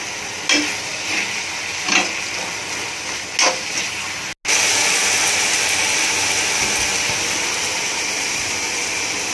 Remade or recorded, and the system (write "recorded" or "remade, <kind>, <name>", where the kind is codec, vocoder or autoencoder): recorded